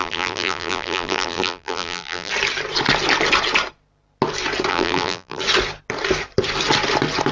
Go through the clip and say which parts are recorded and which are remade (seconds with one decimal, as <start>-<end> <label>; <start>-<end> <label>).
0.0-2.3 remade; 2.3-4.7 recorded; 4.7-5.4 remade; 5.4-7.3 recorded